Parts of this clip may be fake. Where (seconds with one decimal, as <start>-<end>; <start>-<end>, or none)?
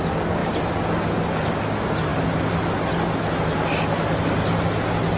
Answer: none